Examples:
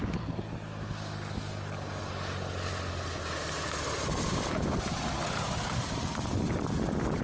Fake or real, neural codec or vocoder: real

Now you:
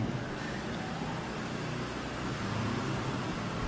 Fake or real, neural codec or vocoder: real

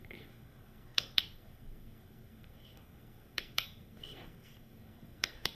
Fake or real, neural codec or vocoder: fake, codec, SNAC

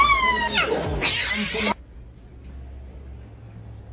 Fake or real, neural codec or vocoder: real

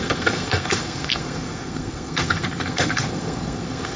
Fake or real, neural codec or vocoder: fake, codec, SNAC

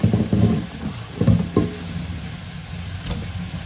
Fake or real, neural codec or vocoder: real